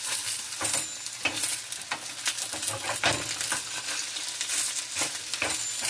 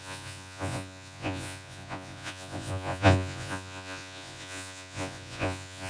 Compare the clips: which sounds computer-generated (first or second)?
second